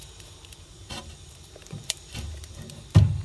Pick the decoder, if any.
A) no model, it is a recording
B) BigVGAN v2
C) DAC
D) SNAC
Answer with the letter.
B